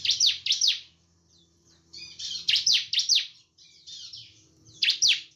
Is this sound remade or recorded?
remade